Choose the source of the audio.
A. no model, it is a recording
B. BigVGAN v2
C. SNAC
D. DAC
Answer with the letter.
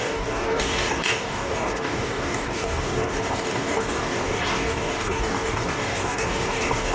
D